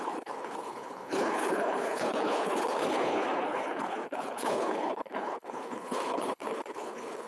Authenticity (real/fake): fake